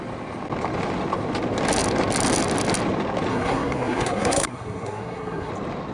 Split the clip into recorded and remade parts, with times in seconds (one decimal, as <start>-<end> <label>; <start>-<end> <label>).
0.0-3.3 recorded; 3.3-5.5 remade; 5.5-5.9 recorded